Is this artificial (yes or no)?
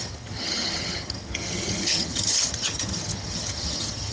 yes